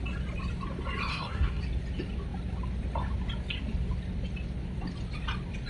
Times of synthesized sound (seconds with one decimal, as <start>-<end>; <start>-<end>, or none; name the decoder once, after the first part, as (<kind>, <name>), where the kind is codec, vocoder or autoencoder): 1.1-1.6 (codec, SNAC)